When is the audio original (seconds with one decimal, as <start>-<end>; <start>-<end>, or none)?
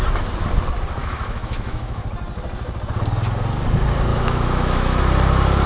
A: 0.0-1.0; 2.0-4.1; 5.0-5.7